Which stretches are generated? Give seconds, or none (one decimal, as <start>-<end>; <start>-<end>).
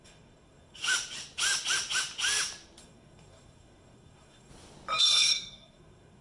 0.0-0.8; 2.8-4.5; 5.0-6.2